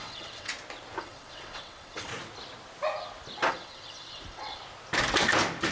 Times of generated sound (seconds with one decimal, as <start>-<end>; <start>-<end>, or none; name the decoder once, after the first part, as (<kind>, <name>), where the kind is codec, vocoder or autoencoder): 0.0-0.5 (vocoder, WaveNeXt); 1.0-2.1; 3.5-4.6